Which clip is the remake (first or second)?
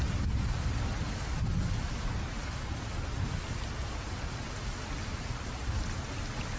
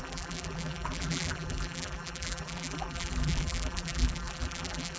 second